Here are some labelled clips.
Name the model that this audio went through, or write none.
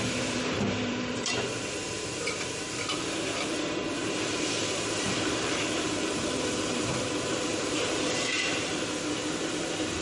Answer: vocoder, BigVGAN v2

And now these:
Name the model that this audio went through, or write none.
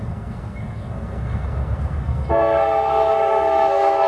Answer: codec, SNAC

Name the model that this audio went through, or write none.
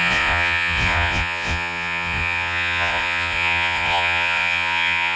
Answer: vocoder, Vocos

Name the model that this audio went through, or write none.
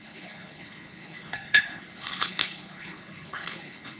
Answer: codec, HILCodec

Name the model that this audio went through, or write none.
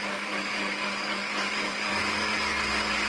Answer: codec, DAC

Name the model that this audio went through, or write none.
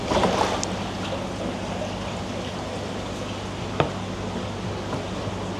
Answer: none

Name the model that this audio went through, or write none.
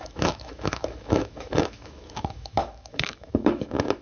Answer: autoencoder, DAC-VAE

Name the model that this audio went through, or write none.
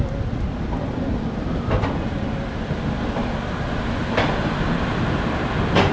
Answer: none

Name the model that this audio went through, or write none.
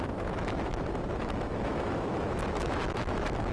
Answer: autoencoder, DAC-VAE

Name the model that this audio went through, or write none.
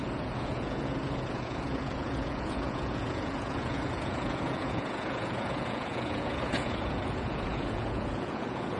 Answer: vocoder, Vocos